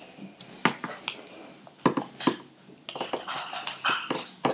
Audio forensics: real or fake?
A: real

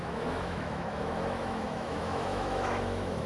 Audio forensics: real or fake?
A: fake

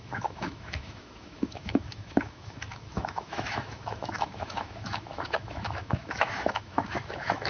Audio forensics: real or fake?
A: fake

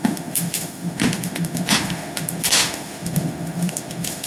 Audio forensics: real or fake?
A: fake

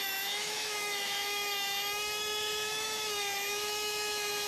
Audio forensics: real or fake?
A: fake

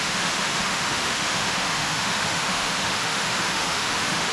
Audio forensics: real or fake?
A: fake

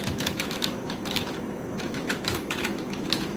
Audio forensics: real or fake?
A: fake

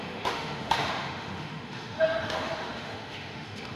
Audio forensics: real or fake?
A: fake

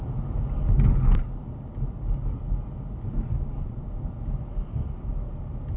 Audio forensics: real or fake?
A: real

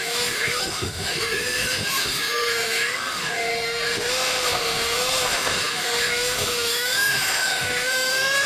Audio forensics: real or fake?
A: fake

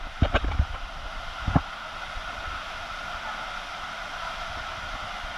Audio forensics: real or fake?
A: real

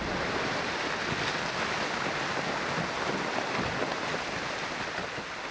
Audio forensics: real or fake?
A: real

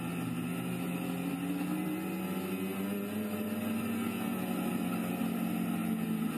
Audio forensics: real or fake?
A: real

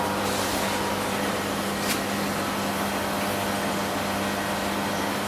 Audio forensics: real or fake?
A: real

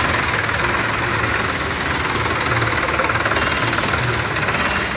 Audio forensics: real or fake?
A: real